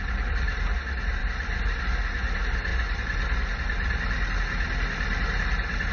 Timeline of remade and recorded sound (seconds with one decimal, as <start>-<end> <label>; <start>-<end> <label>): 0.0-5.9 recorded